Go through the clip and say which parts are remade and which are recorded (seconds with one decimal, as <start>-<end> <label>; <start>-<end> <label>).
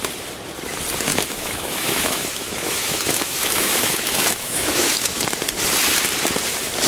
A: 0.0-1.1 recorded; 1.1-5.2 remade; 5.2-6.9 recorded